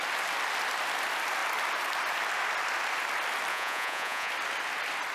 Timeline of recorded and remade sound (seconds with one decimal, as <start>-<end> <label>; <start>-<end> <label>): 0.0-3.5 recorded; 3.5-4.3 remade; 4.3-5.1 recorded